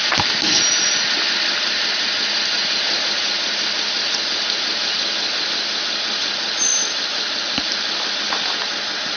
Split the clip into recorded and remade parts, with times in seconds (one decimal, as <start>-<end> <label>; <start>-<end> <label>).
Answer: 0.0-9.2 recorded